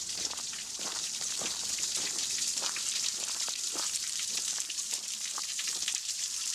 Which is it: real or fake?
fake